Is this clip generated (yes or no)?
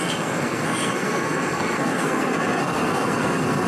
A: yes